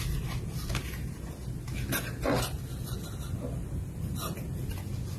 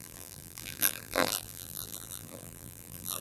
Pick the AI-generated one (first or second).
second